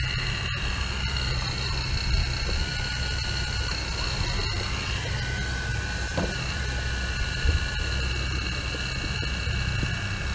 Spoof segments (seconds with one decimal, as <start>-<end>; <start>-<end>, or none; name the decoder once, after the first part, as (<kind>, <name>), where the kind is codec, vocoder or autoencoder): 5.7-8.7 (vocoder, BigVGAN v2)